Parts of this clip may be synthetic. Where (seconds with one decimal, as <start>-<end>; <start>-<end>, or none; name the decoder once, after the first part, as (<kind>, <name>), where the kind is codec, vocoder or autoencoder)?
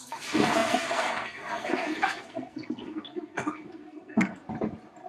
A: 0.0-4.4 (codec, SNAC)